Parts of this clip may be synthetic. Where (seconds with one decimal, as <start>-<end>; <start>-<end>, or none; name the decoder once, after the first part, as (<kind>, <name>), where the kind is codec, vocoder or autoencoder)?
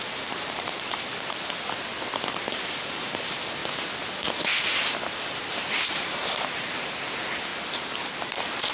0.0-1.1 (vocoder, BigVGAN v2); 2.5-3.6; 5.3-7.5